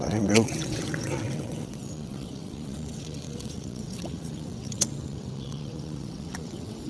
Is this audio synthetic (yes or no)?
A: yes